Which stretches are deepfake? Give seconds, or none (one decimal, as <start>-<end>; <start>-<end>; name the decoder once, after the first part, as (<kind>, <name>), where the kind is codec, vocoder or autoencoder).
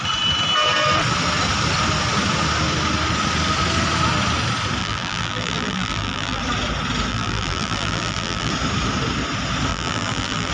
4.8-6.4 (vocoder, BigVGAN v2); 7.1-8.5; 9.7-10.5